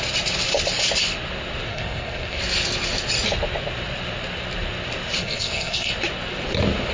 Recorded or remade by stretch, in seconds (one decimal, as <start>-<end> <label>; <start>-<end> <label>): 0.0-1.7 recorded; 1.7-2.4 remade; 2.4-5.2 recorded; 5.2-5.9 remade; 5.9-6.9 recorded